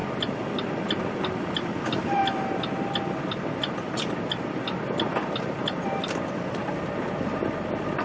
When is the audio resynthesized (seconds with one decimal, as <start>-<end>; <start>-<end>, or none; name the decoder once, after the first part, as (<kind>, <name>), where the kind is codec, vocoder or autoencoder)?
1.1-2.2 (vocoder, BigVGAN v2); 7.0-8.0